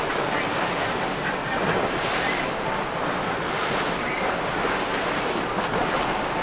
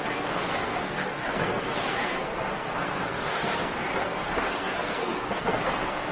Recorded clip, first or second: first